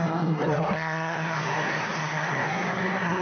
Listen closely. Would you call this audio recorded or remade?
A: remade